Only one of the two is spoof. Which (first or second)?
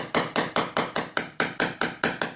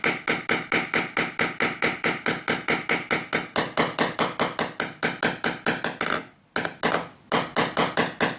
first